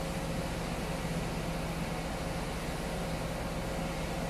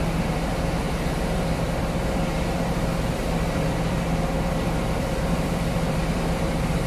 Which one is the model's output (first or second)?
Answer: second